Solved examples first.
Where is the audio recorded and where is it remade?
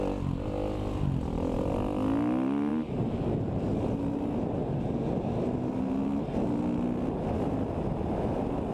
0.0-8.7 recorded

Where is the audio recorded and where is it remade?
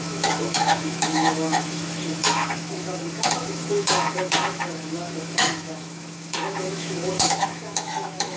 0.0-8.4 remade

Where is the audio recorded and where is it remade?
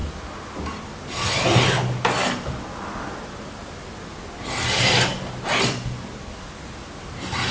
0.0-7.5 recorded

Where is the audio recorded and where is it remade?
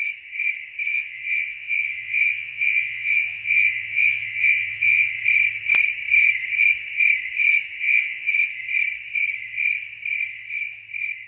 0.0-0.9 recorded; 0.9-5.1 remade; 5.1-7.8 recorded; 7.8-8.3 remade; 8.3-11.3 recorded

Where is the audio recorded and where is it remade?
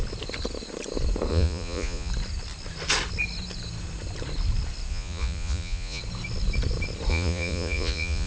0.0-1.3 recorded; 1.3-2.1 remade; 2.1-4.9 recorded; 4.9-6.0 remade; 6.0-7.1 recorded; 7.1-8.3 remade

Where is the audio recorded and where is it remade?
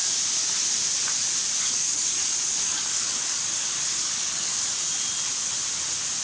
0.0-1.6 recorded; 1.6-4.7 remade; 4.7-6.2 recorded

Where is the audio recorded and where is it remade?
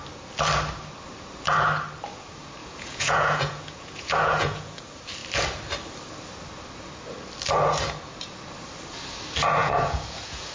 0.0-2.6 recorded; 2.6-4.8 remade; 4.8-9.6 recorded; 9.6-10.5 remade